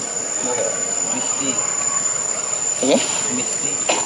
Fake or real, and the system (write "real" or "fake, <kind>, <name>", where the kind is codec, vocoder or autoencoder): real